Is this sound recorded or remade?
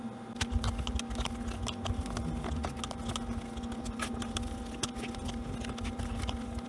recorded